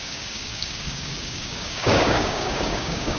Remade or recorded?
remade